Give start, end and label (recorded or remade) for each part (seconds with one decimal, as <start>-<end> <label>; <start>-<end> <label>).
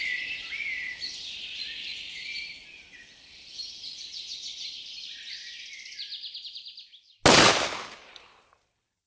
0.0-6.7 remade; 6.7-8.1 recorded; 8.1-9.1 remade